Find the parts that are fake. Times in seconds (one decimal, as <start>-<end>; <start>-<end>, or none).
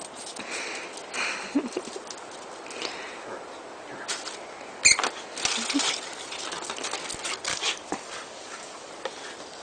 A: 7.5-8.9